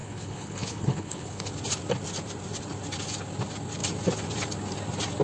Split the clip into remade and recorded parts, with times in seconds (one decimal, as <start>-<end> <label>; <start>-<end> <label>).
0.0-1.5 remade; 1.5-5.2 recorded

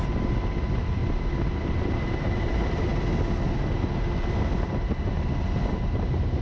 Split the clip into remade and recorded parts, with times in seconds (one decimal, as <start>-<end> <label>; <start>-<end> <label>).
0.0-1.0 remade; 1.0-1.5 recorded; 1.5-2.9 remade; 2.9-5.7 recorded; 5.7-6.4 remade

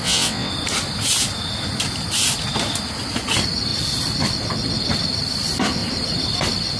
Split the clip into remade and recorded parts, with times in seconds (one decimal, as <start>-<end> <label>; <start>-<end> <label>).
0.0-0.5 remade; 0.5-6.8 recorded